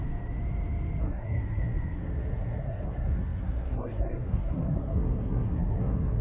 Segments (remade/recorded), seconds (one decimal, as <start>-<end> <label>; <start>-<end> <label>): 0.0-1.0 recorded; 1.0-6.2 remade

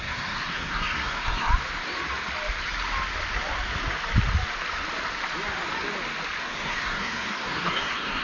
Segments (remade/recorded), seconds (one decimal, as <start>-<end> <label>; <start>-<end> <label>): 0.0-1.5 remade; 1.5-6.4 recorded; 6.4-8.2 remade

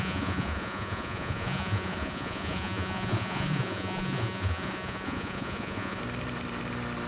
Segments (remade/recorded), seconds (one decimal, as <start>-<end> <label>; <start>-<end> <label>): 0.0-6.0 remade; 6.0-7.1 recorded

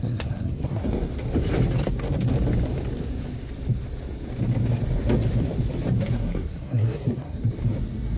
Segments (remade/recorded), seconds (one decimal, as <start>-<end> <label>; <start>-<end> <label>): 0.0-1.1 remade; 1.1-6.0 recorded; 6.0-7.4 remade; 7.4-8.2 recorded

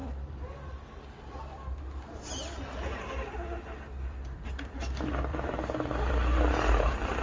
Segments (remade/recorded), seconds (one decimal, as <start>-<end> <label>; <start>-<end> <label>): 0.0-5.3 recorded; 5.3-6.1 remade; 6.1-7.2 recorded

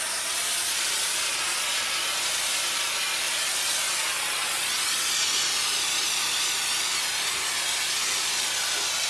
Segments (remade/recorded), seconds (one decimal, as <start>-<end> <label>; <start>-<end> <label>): 0.0-9.1 recorded